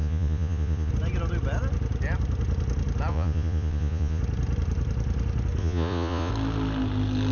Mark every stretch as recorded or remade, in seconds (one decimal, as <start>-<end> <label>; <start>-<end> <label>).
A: 0.0-0.9 remade; 0.9-3.1 recorded; 3.1-4.2 remade; 4.2-5.6 recorded; 5.6-6.3 remade; 6.3-7.3 recorded